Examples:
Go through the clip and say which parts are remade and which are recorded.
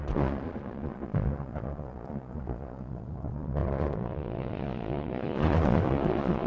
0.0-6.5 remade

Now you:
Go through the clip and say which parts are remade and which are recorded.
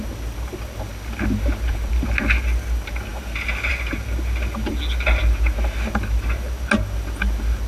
0.0-7.7 recorded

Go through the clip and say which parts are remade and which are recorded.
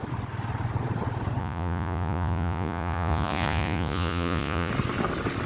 0.0-1.4 recorded; 1.4-4.7 remade; 4.7-5.5 recorded